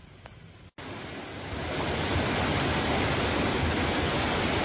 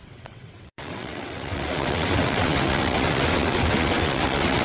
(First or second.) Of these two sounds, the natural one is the first